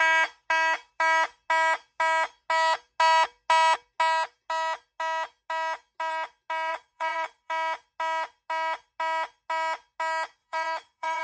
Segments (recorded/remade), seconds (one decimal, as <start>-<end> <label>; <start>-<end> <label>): 0.0-6.7 recorded; 6.7-7.5 remade; 7.5-10.4 recorded; 10.4-11.2 remade